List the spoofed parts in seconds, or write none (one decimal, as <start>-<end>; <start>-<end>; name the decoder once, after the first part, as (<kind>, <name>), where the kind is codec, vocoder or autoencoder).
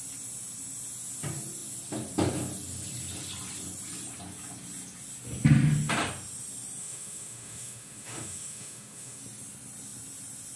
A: 6.8-9.2 (autoencoder, DAC-VAE)